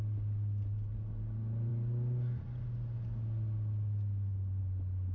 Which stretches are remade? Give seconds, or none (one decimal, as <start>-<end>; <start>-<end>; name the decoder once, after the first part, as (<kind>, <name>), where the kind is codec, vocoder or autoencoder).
none

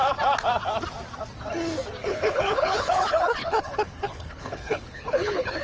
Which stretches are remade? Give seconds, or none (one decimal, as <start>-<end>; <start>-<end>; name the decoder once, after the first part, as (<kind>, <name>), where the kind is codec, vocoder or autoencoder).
2.0-5.6 (codec, HILCodec)

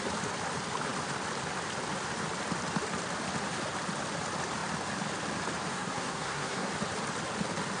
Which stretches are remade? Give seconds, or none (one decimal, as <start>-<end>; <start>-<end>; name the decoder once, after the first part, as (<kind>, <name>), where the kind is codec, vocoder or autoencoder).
5.7-6.7 (codec, SNAC)

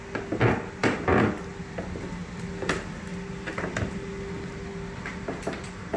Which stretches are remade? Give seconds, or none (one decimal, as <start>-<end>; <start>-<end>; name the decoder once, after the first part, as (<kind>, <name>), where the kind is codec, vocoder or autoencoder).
none

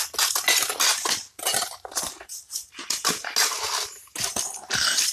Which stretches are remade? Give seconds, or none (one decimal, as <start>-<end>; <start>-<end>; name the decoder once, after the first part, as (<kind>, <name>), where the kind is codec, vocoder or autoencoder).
none

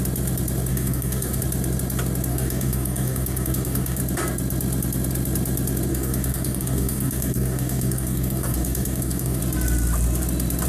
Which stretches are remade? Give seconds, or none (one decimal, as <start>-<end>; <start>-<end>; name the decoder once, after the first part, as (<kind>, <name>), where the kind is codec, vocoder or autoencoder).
0.7-1.4 (codec, DAC); 2.3-4.0; 5.9-9.4

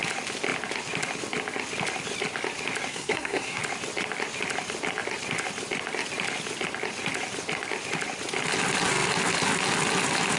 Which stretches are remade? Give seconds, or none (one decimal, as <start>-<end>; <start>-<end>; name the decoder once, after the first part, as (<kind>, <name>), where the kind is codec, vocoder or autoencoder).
2.9-3.6 (codec, SNAC)

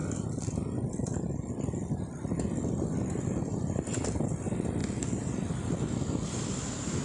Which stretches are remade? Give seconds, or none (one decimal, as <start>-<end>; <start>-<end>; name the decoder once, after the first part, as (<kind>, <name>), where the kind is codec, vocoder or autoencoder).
none